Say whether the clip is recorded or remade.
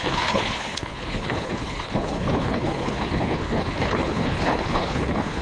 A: remade